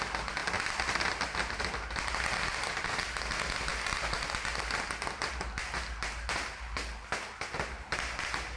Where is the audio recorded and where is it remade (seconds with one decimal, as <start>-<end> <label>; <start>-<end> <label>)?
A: 0.0-8.6 recorded